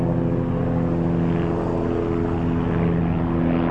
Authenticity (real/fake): real